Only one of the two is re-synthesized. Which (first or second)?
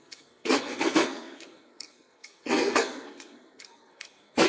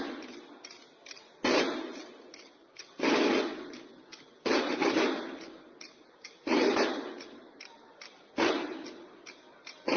first